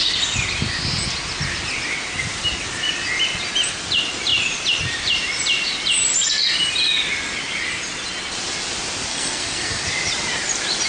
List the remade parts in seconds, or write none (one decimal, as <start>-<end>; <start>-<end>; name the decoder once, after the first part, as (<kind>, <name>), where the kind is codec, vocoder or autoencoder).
9.1-9.8 (codec, SNAC)